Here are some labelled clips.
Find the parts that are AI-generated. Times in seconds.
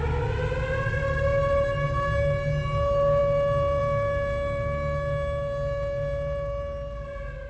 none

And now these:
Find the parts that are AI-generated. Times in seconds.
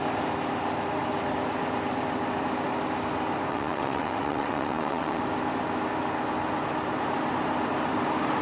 3.5-5.2 (vocoder, WaveNeXt)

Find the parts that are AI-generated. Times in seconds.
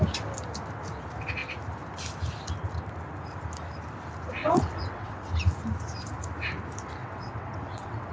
4.4-5.3 (vocoder, WaveNeXt); 7.0-8.1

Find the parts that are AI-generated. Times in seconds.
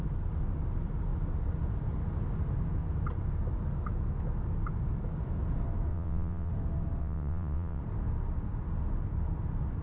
5.9-6.5 (vocoder, WaveNeXt); 7.0-7.8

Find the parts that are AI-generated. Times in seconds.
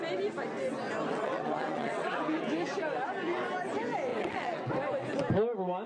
1.1-2.4 (vocoder, WaveNeXt); 4.1-4.7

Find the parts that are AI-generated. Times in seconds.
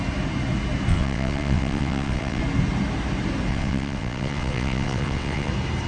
0.9-2.4 (vocoder, WaveNeXt); 3.5-5.5